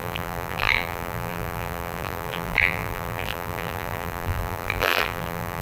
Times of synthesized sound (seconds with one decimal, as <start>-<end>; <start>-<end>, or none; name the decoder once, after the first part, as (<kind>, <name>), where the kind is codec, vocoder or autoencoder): 0.0-5.6 (vocoder, BigVGAN v2)